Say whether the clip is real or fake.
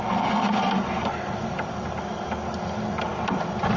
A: real